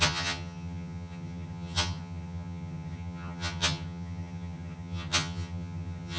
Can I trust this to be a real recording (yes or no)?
no